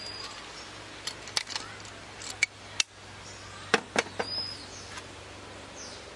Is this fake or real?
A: real